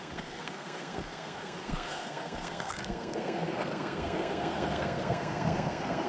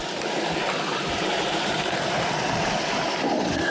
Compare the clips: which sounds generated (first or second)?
first